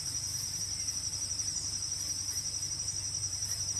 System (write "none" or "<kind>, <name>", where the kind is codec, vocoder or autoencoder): vocoder, BigVGAN v2